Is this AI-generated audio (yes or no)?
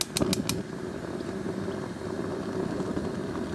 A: no